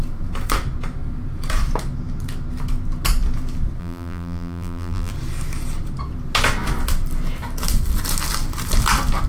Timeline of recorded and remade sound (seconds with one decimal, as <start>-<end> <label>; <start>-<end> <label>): 0.0-3.8 recorded; 3.8-5.1 remade; 5.1-9.3 recorded